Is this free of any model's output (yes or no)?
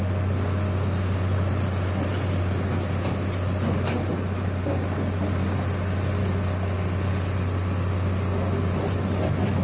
yes